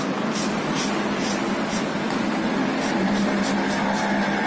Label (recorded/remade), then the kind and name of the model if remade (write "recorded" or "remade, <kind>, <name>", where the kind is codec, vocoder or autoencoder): recorded